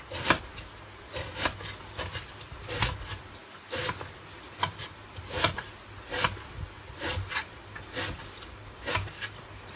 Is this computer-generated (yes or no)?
no